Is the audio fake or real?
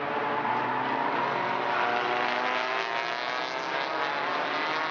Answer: real